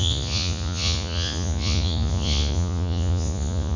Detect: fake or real fake